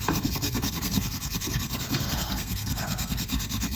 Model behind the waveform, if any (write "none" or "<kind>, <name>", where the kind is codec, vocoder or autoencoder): codec, SNAC